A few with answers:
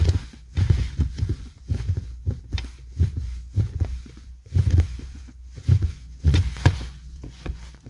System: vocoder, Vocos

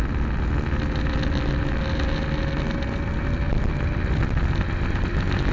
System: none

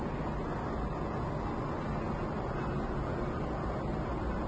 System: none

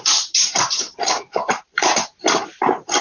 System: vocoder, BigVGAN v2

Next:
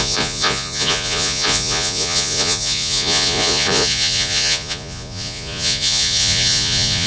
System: vocoder, Vocos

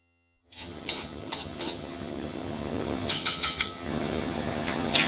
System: vocoder, HiFi-GAN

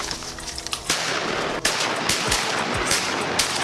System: none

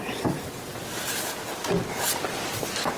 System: vocoder, BigVGAN v2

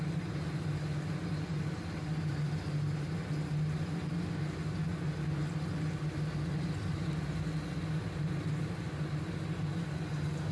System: none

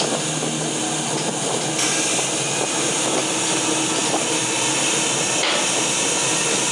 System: none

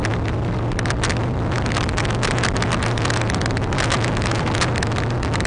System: none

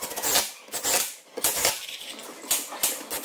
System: none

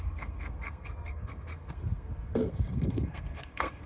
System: codec, SNAC